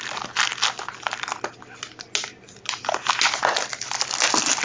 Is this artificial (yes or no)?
no